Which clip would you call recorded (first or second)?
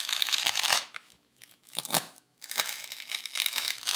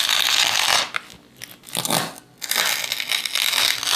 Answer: second